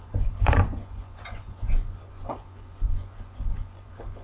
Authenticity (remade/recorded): remade